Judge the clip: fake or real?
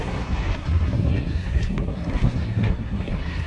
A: fake